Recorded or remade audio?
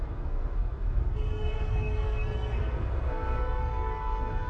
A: remade